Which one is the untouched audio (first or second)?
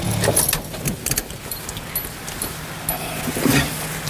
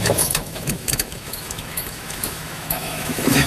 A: first